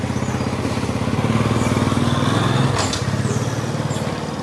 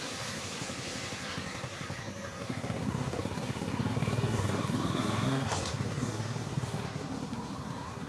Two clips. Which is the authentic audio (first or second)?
first